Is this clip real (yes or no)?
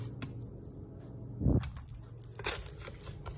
yes